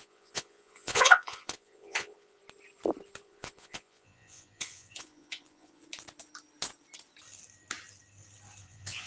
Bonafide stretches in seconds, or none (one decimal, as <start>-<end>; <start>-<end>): 2.4-3.2; 5.8-8.6